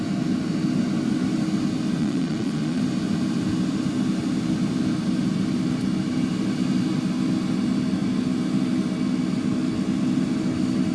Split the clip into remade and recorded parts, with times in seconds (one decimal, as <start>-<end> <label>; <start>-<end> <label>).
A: 0.0-2.0 recorded; 2.0-2.8 remade; 2.8-10.9 recorded